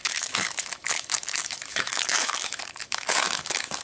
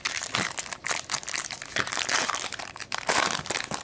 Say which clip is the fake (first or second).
first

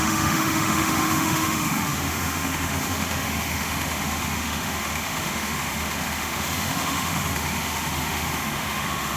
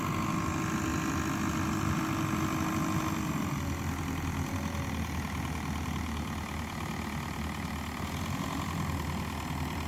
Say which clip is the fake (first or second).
first